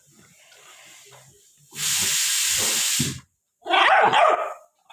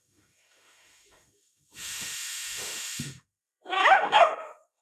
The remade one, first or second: second